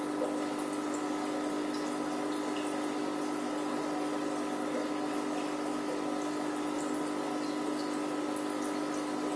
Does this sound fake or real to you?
real